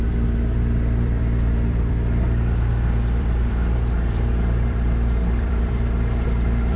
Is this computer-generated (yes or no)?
yes